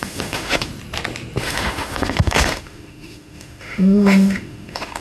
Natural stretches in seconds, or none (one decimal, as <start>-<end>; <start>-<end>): 0.7-1.4